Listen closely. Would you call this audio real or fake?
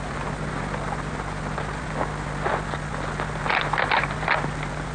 real